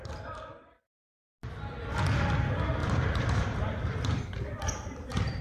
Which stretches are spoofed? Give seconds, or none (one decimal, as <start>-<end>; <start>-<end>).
2.8-4.6